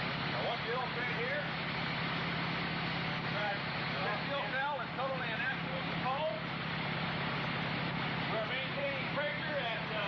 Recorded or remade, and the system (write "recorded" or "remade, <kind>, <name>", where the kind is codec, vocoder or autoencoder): recorded